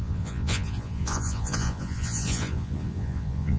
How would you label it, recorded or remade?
remade